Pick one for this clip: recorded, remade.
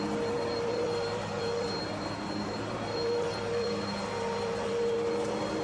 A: remade